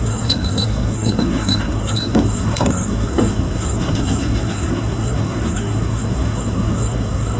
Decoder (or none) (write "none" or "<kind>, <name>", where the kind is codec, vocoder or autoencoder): codec, SNAC